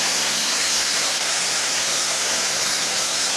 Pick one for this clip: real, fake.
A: fake